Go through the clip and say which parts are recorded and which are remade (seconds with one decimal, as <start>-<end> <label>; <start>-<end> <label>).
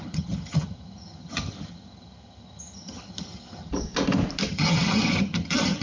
0.0-3.7 remade; 3.7-4.5 recorded; 4.5-5.8 remade